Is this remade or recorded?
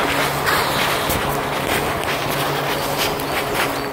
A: recorded